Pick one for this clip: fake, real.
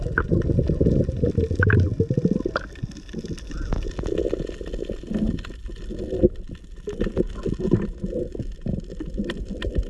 real